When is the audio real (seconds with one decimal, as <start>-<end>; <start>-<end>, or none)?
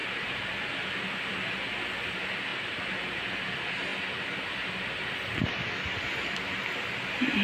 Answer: 0.6-2.5; 3.2-7.4